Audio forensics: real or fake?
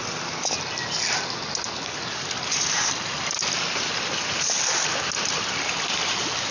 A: real